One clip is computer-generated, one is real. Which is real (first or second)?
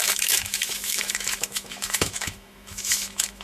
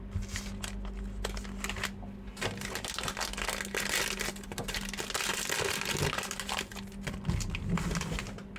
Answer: second